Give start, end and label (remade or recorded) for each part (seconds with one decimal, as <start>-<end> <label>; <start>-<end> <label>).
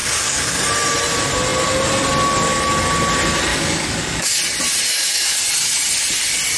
0.0-0.6 remade; 0.6-3.5 recorded; 3.5-4.4 remade; 4.4-4.9 recorded; 4.9-5.4 remade; 5.4-6.6 recorded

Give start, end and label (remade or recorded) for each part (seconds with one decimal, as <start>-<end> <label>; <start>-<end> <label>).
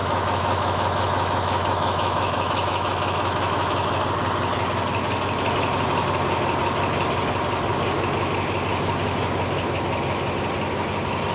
0.0-4.0 remade; 4.0-11.3 recorded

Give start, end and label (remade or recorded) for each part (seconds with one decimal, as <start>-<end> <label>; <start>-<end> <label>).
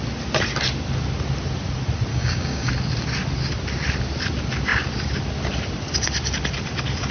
0.0-2.1 recorded; 2.1-2.7 remade; 2.7-7.1 recorded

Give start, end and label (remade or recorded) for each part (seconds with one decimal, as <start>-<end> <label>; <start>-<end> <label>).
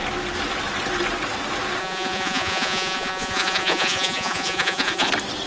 0.0-1.8 recorded; 1.8-5.1 remade; 5.1-5.5 recorded